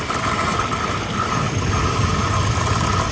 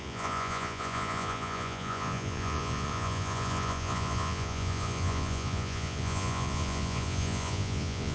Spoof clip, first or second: second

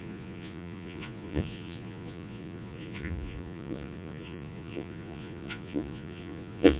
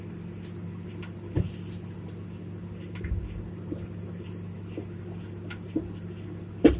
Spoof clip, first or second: first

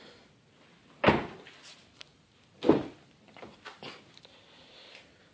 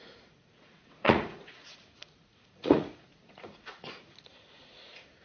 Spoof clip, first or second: second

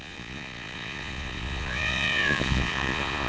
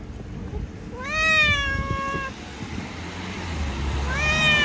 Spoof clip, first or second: first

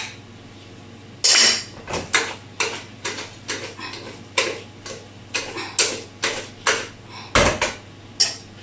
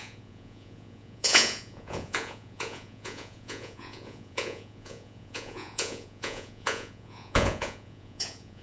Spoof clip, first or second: second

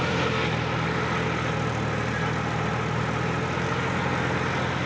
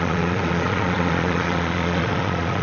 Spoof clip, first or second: second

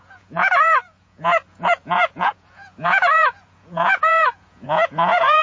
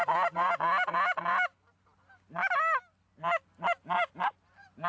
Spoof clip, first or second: first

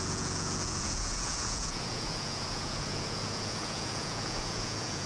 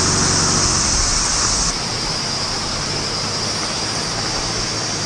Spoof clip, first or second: first